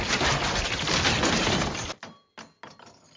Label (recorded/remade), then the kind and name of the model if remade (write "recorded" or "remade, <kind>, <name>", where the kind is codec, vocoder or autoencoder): recorded